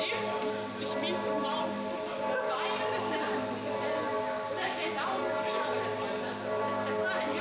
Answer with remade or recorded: recorded